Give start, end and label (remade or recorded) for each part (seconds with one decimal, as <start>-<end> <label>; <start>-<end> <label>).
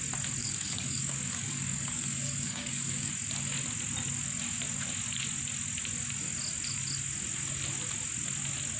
0.0-0.4 recorded; 0.4-3.1 remade; 3.1-8.8 recorded